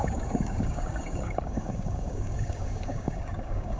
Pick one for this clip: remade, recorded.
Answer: remade